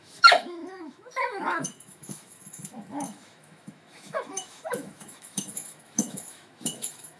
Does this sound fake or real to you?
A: fake